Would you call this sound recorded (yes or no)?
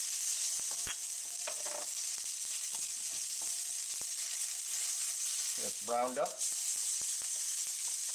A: yes